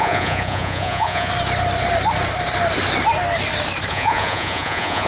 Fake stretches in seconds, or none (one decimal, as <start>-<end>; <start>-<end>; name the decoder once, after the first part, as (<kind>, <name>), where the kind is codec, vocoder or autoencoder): 0.0-1.3 (vocoder, Vocos); 3.9-5.1